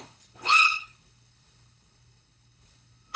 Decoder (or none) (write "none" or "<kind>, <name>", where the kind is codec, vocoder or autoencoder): codec, HILCodec